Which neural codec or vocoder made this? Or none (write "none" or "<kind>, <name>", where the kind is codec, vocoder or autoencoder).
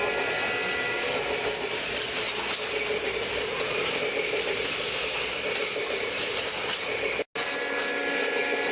none